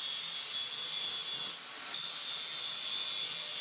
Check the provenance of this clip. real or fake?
real